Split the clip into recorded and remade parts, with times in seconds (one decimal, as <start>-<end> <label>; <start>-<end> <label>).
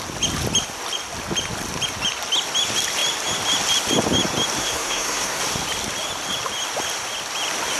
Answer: 0.0-4.6 recorded; 4.6-5.4 remade; 5.4-7.8 recorded